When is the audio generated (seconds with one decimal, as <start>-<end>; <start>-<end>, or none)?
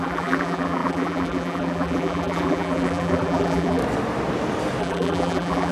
0.0-3.8; 4.8-5.7